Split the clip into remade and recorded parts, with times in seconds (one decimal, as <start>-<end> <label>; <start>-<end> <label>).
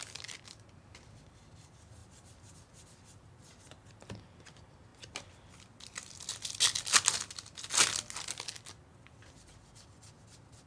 0.0-2.0 recorded; 2.0-3.3 remade; 3.3-4.9 recorded; 4.9-6.1 remade; 6.1-8.9 recorded; 8.9-9.5 remade; 9.5-10.7 recorded